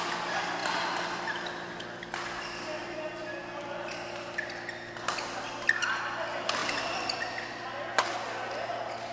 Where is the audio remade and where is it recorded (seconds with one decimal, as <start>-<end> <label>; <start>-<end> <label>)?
0.0-9.1 recorded